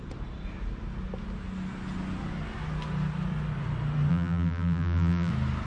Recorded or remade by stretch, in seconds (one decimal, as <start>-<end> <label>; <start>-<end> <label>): 0.0-4.1 recorded; 4.1-5.3 remade; 5.3-5.7 recorded